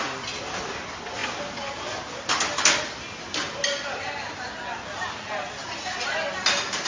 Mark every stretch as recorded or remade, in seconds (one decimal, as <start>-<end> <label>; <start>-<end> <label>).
0.0-6.9 recorded